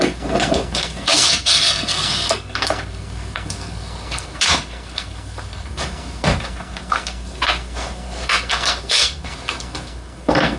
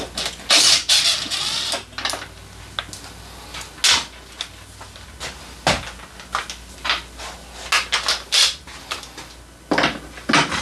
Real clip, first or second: second